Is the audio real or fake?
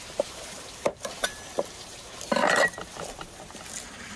fake